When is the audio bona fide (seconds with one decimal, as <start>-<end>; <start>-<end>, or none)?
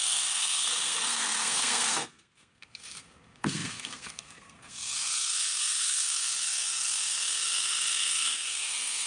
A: none